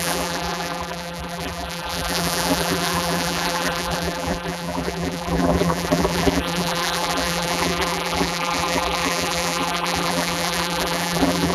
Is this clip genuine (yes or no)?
no